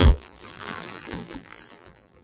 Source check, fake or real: fake